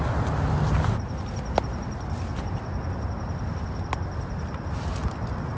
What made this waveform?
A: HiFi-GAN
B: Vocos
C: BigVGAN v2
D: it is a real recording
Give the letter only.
D